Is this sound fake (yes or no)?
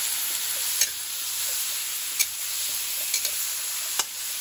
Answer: no